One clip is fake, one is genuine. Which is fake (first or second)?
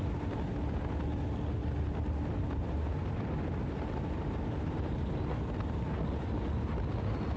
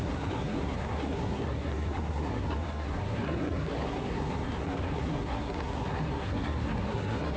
second